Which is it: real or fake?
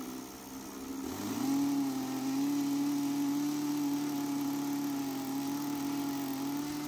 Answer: real